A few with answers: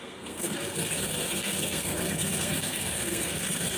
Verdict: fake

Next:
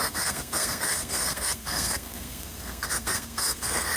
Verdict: fake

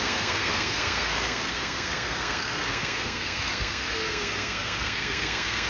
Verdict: fake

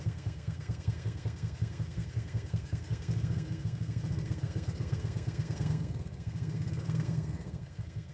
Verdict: fake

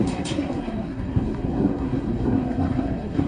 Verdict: fake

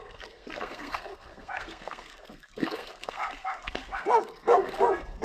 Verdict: fake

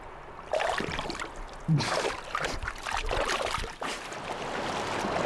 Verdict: real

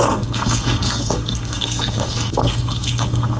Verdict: fake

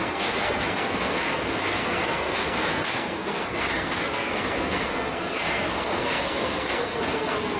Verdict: fake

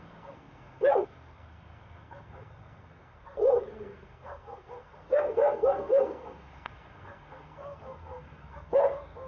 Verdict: fake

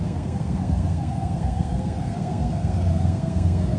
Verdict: fake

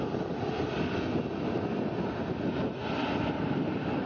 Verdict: real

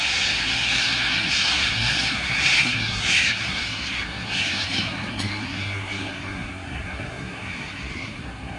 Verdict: fake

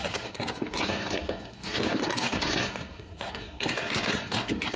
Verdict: fake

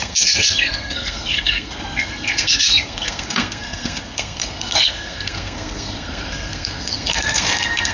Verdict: fake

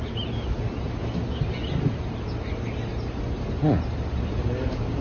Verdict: real